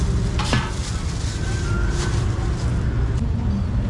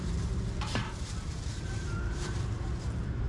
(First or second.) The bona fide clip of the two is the first